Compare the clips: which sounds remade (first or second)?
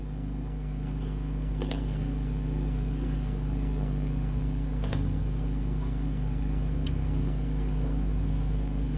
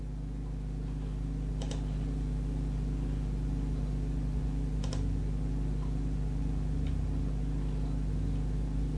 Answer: first